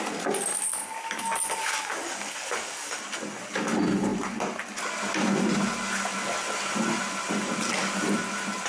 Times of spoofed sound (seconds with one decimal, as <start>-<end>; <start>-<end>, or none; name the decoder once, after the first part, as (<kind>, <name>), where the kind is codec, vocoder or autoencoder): 0.7-3.0 (codec, DAC)